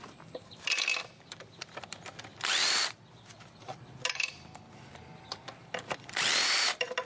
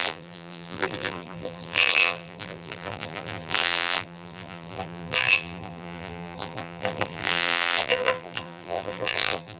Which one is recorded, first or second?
first